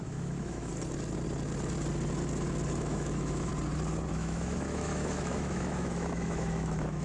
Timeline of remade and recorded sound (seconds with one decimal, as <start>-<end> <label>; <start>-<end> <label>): 0.0-0.7 remade; 0.7-2.8 recorded; 2.8-3.5 remade; 3.5-4.1 recorded; 4.1-7.0 remade

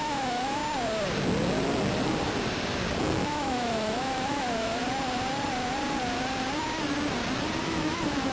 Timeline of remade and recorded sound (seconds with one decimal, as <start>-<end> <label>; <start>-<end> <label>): 0.0-0.6 remade; 0.6-3.0 recorded; 3.0-4.8 remade; 4.8-7.6 recorded; 7.6-8.3 remade

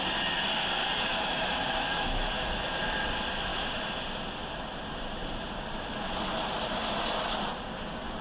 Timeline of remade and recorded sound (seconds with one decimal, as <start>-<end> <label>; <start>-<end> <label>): 0.0-1.1 recorded; 1.1-2.8 remade; 2.8-8.2 recorded